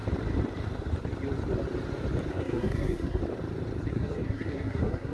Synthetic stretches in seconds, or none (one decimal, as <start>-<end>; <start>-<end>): 2.3-3.2; 3.9-5.1